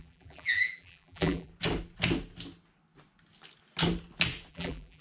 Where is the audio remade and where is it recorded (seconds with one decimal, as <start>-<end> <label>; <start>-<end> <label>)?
0.0-1.5 remade; 1.5-4.5 recorded; 4.5-5.0 remade